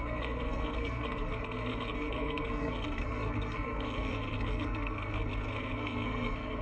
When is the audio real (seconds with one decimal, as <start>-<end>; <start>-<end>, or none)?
none